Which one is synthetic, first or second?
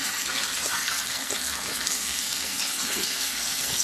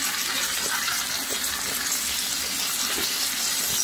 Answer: first